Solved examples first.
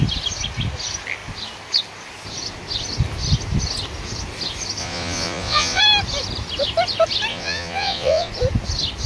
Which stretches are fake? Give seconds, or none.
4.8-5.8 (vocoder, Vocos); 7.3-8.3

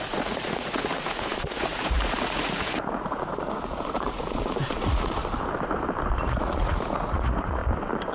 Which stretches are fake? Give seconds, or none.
0.0-5.2 (vocoder, Vocos); 6.2-7.6

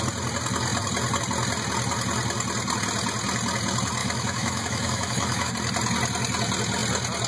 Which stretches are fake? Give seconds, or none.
4.0-5.5 (autoencoder, DAC-VAE)

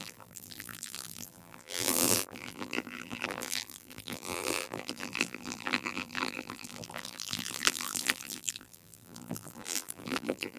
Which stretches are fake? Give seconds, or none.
0.0-10.6 (vocoder, BigVGAN v2)

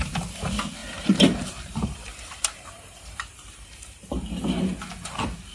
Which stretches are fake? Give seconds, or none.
0.8-4.1 (vocoder, BigVGAN v2)

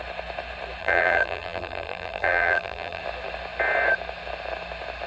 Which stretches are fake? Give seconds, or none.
0.8-3.0 (vocoder, BigVGAN v2)